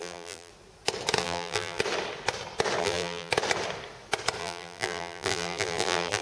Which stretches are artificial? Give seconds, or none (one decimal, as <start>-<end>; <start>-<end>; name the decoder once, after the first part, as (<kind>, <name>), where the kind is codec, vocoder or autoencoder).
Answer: 0.0-0.5 (vocoder, BigVGAN v2); 1.2-1.8; 2.8-3.3; 4.4-6.2